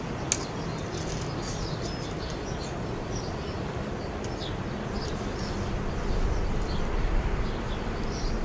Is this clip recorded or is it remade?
recorded